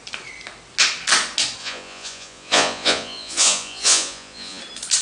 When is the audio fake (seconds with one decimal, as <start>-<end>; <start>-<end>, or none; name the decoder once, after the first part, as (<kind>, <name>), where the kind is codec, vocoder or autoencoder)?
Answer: 1.6-4.6 (vocoder, Vocos)